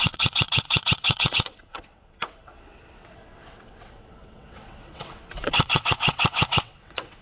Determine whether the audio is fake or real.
fake